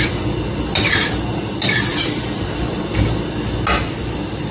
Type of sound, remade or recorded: recorded